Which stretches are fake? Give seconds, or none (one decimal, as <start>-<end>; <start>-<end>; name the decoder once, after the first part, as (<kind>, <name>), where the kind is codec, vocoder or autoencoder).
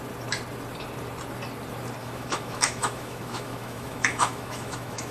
2.0-5.1 (autoencoder, DAC-VAE)